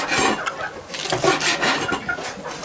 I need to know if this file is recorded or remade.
recorded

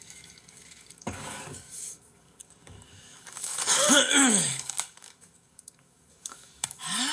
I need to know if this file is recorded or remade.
remade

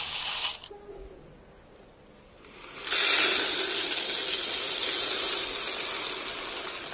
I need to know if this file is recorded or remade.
recorded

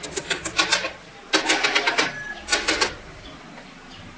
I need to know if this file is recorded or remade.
recorded